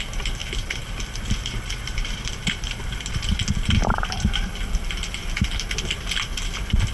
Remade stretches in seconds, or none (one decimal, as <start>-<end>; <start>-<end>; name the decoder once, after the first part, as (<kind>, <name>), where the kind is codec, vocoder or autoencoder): 0.4-4.5 (vocoder, BigVGAN v2)